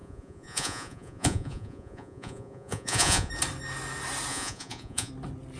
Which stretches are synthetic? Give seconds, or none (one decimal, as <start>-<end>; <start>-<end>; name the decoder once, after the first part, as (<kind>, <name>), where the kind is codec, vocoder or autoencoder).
0.0-3.3 (vocoder, Vocos); 4.3-5.1

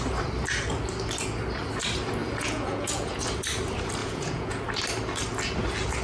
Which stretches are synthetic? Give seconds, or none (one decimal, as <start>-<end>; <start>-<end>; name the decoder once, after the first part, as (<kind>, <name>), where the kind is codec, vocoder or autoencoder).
2.2-3.2 (vocoder, Vocos); 4.0-4.6

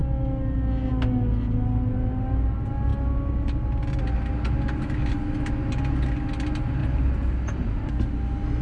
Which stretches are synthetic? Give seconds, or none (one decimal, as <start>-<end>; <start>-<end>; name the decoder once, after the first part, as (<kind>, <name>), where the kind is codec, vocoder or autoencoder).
6.8-7.9 (vocoder, BigVGAN v2)

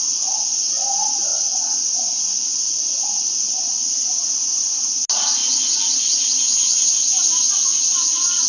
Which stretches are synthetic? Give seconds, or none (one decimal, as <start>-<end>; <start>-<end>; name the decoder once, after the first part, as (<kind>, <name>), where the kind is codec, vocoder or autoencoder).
1.3-3.4 (vocoder, BigVGAN v2); 5.4-6.9; 7.7-8.5

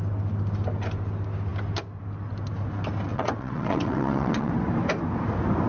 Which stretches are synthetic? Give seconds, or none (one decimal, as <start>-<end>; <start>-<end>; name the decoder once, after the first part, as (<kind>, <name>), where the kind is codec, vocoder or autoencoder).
3.1-4.5 (vocoder, WaveNeXt)